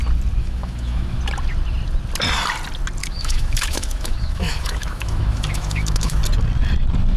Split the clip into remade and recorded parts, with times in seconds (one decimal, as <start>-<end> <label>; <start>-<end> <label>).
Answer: 0.0-0.4 recorded; 0.4-1.2 remade; 1.2-3.0 recorded; 3.0-6.2 remade; 6.2-7.2 recorded